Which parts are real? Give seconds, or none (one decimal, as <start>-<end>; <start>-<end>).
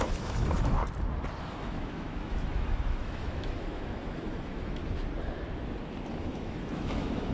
0.8-1.4; 4.8-6.2